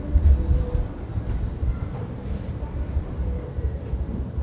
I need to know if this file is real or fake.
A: real